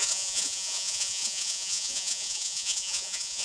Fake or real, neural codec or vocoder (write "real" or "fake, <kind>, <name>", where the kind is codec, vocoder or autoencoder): fake, vocoder, Vocos